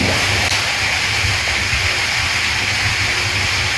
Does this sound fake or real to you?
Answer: real